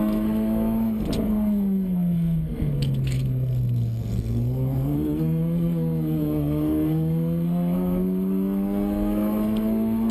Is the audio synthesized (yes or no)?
yes